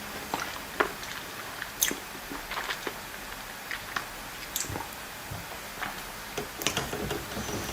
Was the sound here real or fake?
real